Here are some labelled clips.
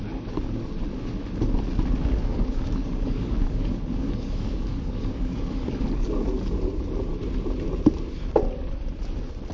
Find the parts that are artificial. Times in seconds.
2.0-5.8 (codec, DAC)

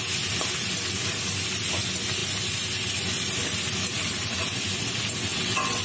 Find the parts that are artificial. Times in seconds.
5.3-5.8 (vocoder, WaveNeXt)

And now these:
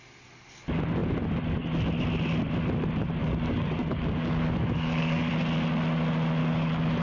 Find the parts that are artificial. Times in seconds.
3.2-5.3 (codec, DAC); 6.4-7.0